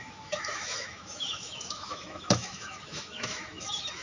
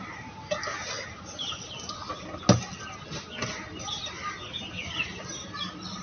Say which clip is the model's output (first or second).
first